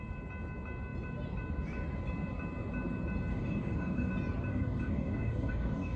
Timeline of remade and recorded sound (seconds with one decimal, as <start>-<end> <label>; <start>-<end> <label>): 0.0-3.3 recorded; 3.3-4.1 remade; 4.1-4.5 recorded; 4.5-6.0 remade